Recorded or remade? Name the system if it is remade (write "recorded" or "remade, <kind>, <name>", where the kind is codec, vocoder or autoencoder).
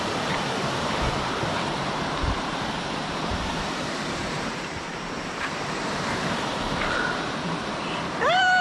remade, vocoder, BigVGAN v2